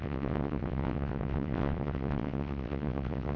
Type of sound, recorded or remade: remade